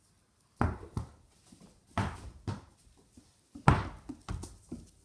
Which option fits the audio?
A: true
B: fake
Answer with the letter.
A